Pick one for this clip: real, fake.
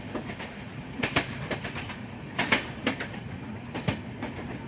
real